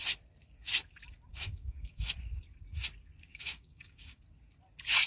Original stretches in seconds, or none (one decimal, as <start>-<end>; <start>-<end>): 0.0-1.3; 2.1-3.3; 4.2-5.1